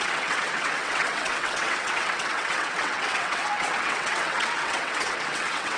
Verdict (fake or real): fake